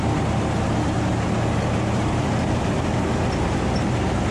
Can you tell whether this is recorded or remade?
recorded